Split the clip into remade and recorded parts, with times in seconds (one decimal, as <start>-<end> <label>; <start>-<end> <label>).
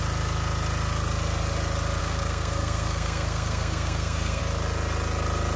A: 0.0-2.0 recorded; 2.0-4.4 remade; 4.4-5.6 recorded